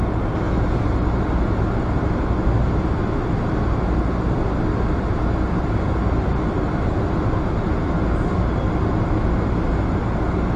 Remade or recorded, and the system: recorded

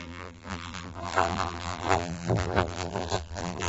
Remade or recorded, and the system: remade, vocoder, BigVGAN v2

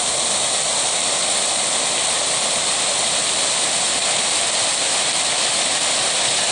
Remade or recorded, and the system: recorded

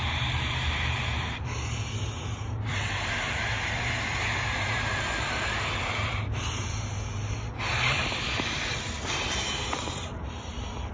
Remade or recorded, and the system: remade, vocoder, BigVGAN v2